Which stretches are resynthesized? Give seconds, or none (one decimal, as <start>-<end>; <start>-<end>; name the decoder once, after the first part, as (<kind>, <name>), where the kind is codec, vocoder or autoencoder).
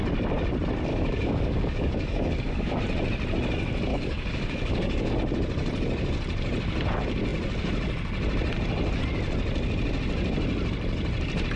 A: 0.9-2.8 (codec, DAC); 3.9-5.1